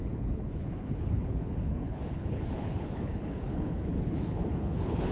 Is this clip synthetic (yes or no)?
yes